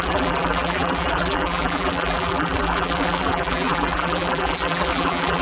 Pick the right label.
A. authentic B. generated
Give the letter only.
B